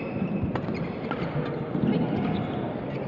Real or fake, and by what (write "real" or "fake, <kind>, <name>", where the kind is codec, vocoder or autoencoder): real